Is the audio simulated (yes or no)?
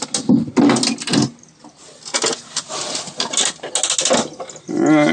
no